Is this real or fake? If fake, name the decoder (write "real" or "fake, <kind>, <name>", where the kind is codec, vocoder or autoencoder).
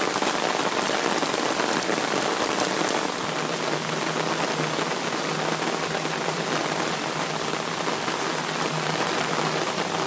real